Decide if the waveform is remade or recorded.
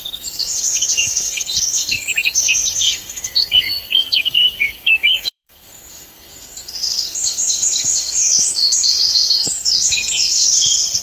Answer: remade